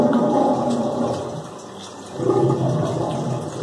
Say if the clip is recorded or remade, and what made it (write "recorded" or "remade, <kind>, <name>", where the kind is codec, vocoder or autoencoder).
recorded